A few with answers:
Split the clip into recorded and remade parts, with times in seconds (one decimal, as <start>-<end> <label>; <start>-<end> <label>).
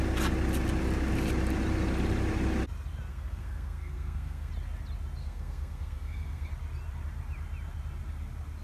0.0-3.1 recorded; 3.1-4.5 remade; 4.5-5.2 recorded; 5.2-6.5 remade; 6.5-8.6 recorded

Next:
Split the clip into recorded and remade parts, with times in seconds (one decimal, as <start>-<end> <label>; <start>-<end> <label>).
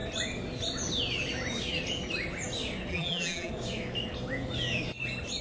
0.0-2.9 recorded; 2.9-3.5 remade; 3.5-5.4 recorded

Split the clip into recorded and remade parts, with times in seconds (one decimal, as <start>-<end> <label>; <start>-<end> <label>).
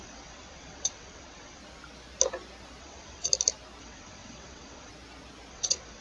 0.0-1.6 remade; 1.6-2.8 recorded; 2.8-3.3 remade; 3.3-3.8 recorded; 3.8-4.9 remade; 4.9-5.5 recorded; 5.5-6.0 remade